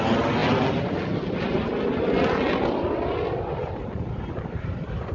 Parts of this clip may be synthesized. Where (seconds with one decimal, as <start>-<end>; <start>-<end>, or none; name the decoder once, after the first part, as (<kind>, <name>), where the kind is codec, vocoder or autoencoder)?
none